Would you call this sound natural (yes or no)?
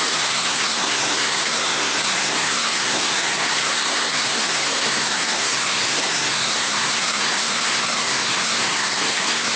no